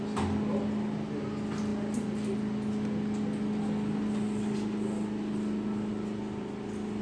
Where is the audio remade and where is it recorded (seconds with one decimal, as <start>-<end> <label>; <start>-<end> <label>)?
0.0-7.0 recorded